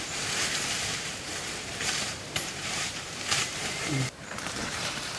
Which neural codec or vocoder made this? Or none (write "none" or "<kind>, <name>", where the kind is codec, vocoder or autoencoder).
vocoder, BigVGAN v2